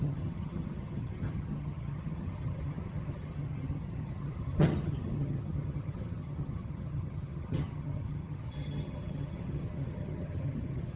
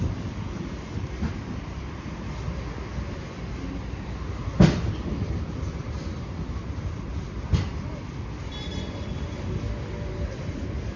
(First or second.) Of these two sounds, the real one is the second